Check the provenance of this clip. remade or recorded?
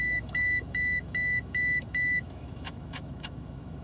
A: remade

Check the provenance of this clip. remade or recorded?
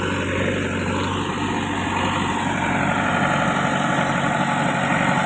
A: recorded